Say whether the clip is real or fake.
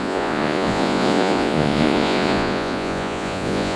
fake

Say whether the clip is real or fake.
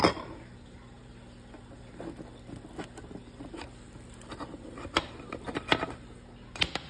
real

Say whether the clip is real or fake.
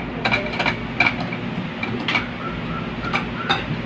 real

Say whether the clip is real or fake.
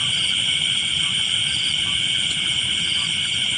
fake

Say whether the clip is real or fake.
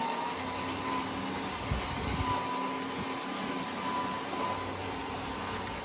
real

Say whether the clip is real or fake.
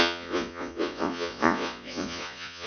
fake